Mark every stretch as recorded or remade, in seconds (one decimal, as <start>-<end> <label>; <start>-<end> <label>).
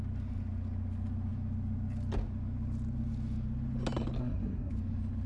0.0-4.2 recorded; 4.2-4.7 remade; 4.7-5.3 recorded